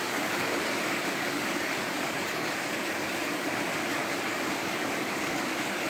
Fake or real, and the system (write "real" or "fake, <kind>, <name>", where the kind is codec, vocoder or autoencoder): fake, codec, DAC